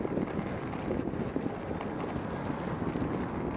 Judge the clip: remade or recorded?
recorded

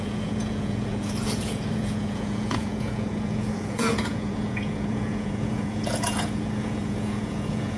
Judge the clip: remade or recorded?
remade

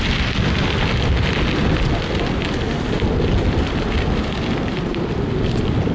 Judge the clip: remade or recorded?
recorded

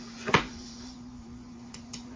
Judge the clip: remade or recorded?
remade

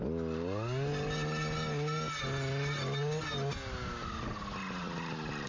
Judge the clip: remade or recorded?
recorded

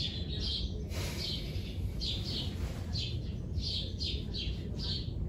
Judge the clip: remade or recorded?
recorded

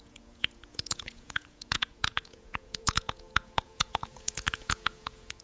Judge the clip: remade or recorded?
remade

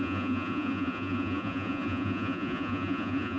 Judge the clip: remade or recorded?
remade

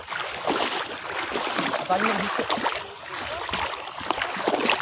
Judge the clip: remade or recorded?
recorded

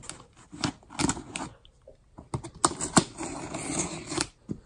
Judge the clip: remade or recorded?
recorded